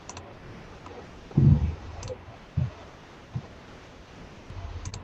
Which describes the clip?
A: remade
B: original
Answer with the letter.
A